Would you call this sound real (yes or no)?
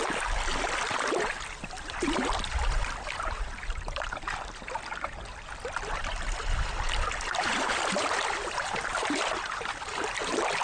yes